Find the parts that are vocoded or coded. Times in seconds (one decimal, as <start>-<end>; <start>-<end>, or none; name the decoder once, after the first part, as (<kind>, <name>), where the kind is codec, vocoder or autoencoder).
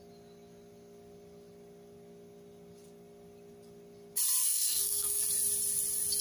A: 4.4-5.2 (codec, SNAC)